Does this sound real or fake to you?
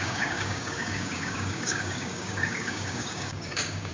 fake